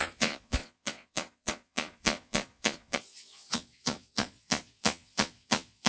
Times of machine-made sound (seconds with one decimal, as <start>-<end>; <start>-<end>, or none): 0.0-5.9